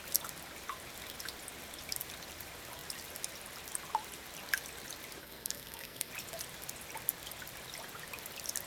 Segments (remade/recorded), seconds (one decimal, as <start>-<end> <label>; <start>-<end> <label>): 0.0-5.2 recorded; 5.2-6.1 remade; 6.1-8.7 recorded